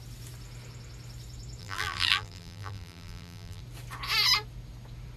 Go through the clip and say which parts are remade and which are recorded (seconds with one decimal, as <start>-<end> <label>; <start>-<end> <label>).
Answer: 0.0-1.6 recorded; 1.6-3.6 remade; 3.6-5.2 recorded